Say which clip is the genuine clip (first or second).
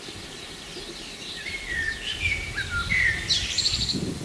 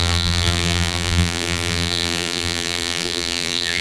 first